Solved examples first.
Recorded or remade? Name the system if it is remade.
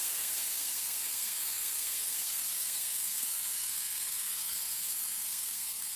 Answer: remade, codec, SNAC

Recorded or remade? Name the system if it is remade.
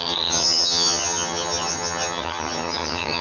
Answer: remade, vocoder, HiFi-GAN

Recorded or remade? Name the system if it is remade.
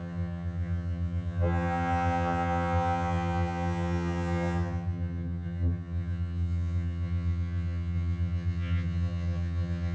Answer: remade, vocoder, HiFi-GAN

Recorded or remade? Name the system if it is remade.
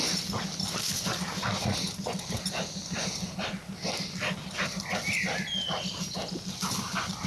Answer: recorded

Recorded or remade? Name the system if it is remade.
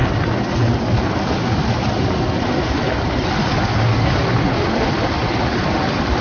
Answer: recorded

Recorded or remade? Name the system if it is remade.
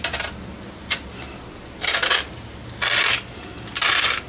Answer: recorded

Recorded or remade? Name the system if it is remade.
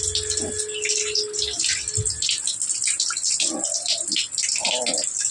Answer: recorded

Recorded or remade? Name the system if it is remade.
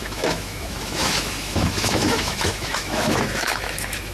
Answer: remade, autoencoder, DAC-VAE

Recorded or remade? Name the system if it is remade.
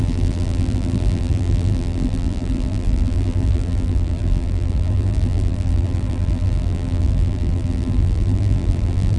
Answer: remade, vocoder, BigVGAN v2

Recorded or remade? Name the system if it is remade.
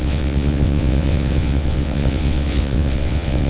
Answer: remade, vocoder, WaveNeXt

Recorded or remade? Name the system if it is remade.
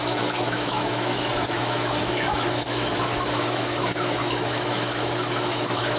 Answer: remade, autoencoder, DAC-VAE